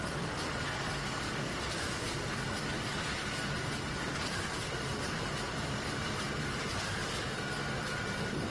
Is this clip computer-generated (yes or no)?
yes